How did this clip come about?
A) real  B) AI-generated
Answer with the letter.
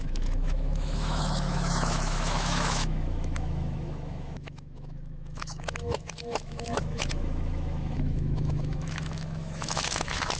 B